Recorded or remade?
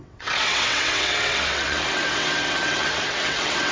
remade